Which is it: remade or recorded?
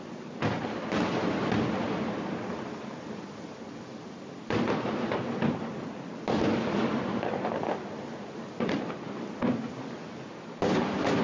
remade